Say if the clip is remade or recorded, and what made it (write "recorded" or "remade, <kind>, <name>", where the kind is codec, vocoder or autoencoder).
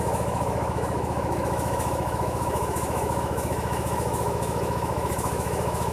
remade, autoencoder, DAC-VAE